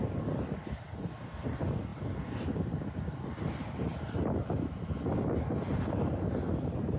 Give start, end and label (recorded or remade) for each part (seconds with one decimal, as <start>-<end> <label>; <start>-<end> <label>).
0.0-7.0 recorded

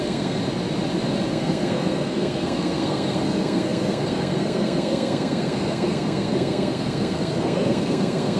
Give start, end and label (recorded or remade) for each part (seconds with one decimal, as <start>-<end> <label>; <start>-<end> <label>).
0.0-0.4 remade; 0.4-1.3 recorded; 1.3-8.4 remade

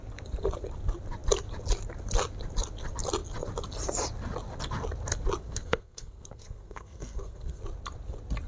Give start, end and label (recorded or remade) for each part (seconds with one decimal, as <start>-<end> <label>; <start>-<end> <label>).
0.0-5.4 recorded; 5.4-7.6 remade; 7.6-8.5 recorded

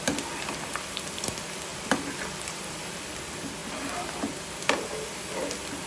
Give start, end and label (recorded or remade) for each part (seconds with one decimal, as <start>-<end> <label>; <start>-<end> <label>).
0.0-5.9 recorded

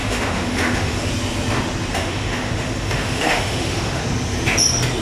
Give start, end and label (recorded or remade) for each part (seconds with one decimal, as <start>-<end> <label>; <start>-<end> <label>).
0.0-1.1 remade; 1.1-1.9 recorded; 1.9-4.0 remade; 4.0-5.0 recorded

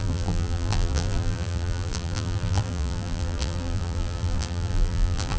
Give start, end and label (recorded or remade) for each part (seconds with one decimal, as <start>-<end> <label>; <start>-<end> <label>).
0.0-5.4 remade

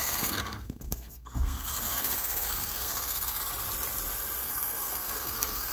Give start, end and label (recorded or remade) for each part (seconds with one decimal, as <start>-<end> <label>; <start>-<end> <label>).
0.0-3.4 remade; 3.4-4.4 recorded; 4.4-5.7 remade